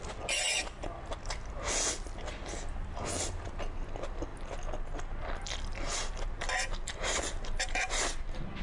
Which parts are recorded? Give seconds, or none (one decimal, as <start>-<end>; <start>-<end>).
0.0-8.6